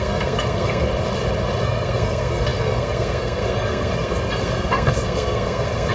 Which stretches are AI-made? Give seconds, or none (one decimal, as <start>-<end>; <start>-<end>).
0.0-0.9; 1.6-5.9